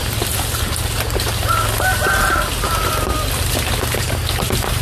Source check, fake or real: real